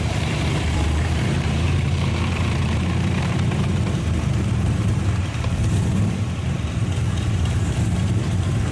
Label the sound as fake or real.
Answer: fake